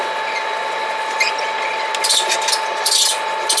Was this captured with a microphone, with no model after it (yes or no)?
yes